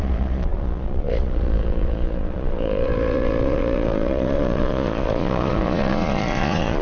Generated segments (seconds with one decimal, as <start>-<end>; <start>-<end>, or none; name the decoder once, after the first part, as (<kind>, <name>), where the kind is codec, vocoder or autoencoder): 0.0-6.8 (vocoder, Vocos)